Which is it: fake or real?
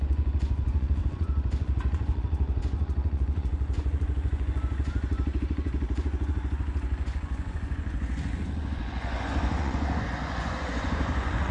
fake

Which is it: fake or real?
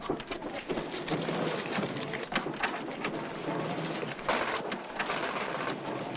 real